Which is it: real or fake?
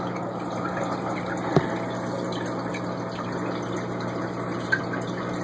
real